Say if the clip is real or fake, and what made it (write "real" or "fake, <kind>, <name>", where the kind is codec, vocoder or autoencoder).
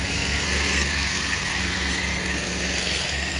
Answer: fake, codec, SNAC